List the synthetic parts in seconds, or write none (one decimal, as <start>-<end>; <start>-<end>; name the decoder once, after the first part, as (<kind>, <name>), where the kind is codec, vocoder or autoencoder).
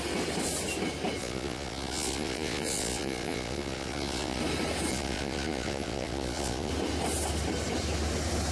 1.2-4.4 (vocoder, Vocos); 4.9-6.7